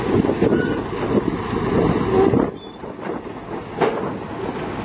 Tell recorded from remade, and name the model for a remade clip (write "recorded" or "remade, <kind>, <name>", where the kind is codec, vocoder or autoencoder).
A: recorded